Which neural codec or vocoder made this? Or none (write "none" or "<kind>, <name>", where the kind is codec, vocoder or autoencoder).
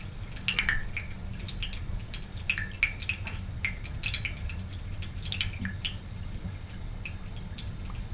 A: none